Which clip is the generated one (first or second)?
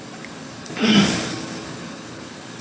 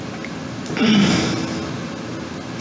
first